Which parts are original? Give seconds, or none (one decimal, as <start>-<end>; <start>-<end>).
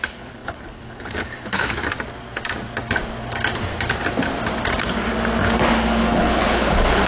1.8-6.1